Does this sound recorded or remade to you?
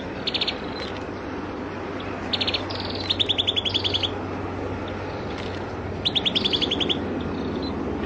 recorded